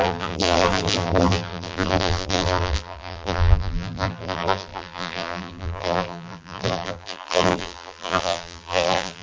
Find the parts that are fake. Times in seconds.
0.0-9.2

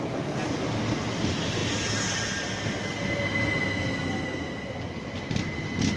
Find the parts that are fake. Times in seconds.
none

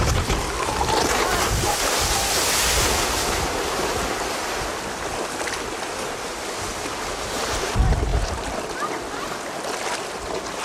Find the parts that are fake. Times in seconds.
none

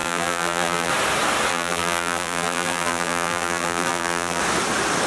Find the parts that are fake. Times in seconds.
0.0-0.9; 1.5-4.4

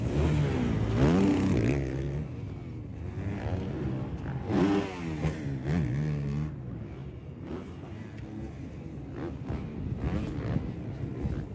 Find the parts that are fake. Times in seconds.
7.0-7.7